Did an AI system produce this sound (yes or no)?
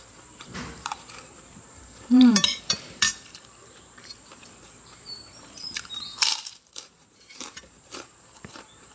yes